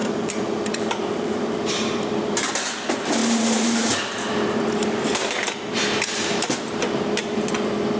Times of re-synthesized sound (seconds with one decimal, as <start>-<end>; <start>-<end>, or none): 0.0-2.5; 3.2-7.5